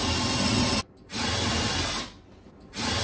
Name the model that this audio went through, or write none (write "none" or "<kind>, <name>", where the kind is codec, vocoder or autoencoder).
none